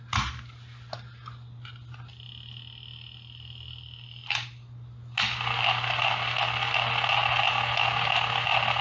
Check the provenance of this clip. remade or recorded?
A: recorded